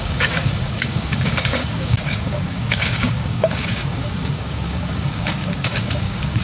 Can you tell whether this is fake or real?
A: fake